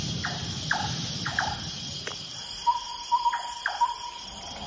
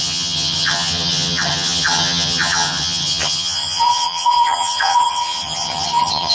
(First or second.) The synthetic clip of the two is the second